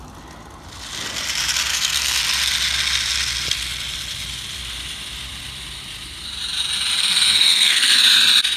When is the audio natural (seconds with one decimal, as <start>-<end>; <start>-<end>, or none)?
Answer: 0.0-1.7; 2.2-7.0; 8.0-8.6